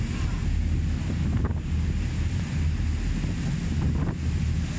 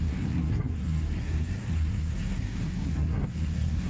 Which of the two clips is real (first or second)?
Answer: first